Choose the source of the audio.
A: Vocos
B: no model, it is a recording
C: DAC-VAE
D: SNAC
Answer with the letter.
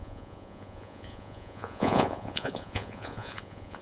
A